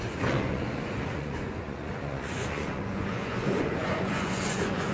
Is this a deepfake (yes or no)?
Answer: yes